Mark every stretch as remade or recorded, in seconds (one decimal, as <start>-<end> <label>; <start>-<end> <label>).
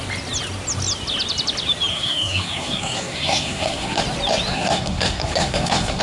0.0-1.9 recorded; 1.9-4.0 remade; 4.0-4.5 recorded; 4.5-6.0 remade